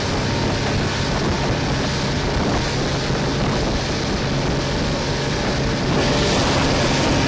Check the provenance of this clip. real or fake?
real